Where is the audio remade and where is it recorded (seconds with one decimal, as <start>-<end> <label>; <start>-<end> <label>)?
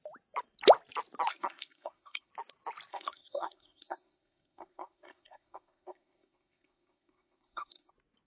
0.0-1.3 recorded; 1.3-2.3 remade; 2.3-2.9 recorded; 2.9-7.9 remade; 7.9-8.3 recorded